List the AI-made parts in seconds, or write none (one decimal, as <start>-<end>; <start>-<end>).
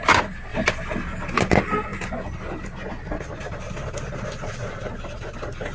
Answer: none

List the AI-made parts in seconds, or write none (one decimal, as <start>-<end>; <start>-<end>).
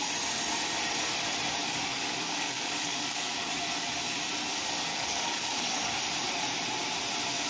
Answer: 1.6-3.5; 4.9-6.0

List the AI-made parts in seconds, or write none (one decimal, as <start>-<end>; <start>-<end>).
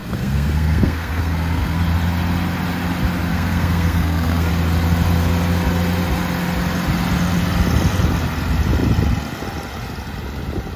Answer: 0.0-1.8; 3.3-4.5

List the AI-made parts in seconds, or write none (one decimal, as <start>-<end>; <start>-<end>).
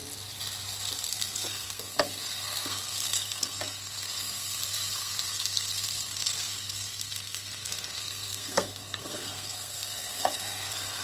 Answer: 1.1-11.0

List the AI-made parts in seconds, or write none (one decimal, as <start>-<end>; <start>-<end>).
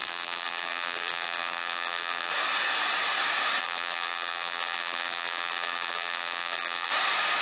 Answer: 0.0-2.3; 3.6-6.9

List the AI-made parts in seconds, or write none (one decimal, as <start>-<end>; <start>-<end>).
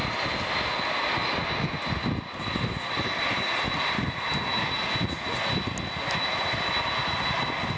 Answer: none